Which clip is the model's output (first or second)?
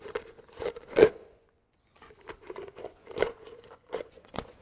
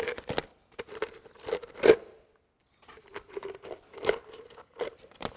first